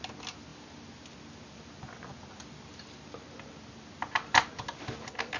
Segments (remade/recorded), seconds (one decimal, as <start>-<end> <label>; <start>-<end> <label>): 0.0-5.4 recorded